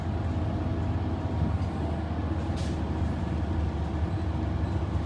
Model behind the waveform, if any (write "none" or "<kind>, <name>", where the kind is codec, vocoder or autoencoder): none